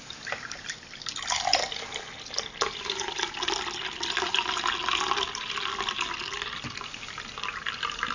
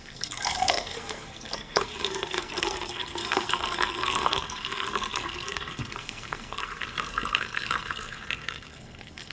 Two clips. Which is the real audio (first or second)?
first